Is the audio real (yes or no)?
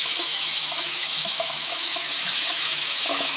no